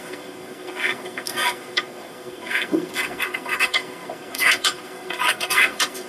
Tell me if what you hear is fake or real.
fake